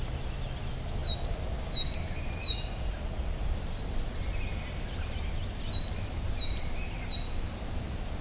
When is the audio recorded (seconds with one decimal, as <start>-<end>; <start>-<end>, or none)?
0.0-2.5; 3.6-8.2